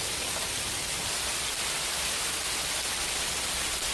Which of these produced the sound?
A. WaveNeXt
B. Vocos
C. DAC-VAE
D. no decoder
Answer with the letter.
D